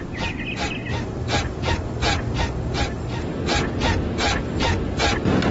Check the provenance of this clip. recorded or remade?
recorded